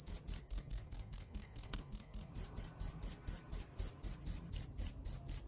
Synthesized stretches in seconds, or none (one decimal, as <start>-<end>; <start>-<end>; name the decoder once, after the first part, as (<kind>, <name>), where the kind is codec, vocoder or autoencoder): 0.4-2.3 (codec, SNAC)